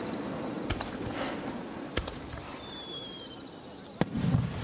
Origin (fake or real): real